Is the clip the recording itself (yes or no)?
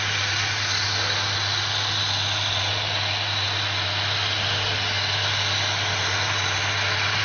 yes